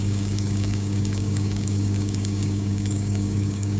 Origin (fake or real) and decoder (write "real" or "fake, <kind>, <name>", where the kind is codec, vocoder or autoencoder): fake, codec, DAC